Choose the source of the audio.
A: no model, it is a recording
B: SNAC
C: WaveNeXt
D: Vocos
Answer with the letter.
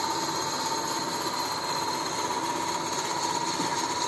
A